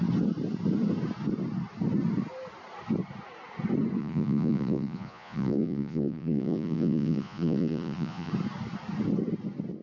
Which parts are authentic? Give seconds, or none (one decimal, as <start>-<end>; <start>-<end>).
0.0-4.0; 8.3-9.8